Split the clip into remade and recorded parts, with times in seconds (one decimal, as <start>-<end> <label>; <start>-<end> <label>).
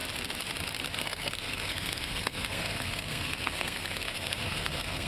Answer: 0.0-1.0 recorded; 1.0-5.1 remade